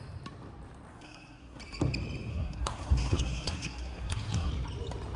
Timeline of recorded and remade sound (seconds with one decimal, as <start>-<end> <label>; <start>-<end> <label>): 0.0-0.9 recorded; 0.9-1.6 remade; 1.6-2.3 recorded; 2.3-4.5 remade; 4.5-5.2 recorded